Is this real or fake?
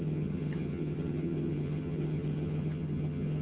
fake